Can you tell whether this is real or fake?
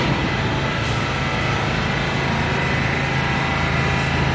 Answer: real